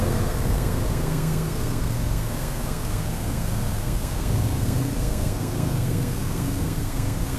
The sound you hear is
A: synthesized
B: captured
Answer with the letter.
A